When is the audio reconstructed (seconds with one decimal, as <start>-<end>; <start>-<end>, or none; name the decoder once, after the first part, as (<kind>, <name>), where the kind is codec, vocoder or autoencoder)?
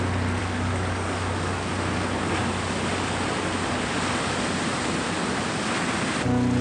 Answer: 0.4-1.7 (codec, DAC)